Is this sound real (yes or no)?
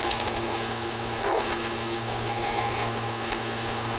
no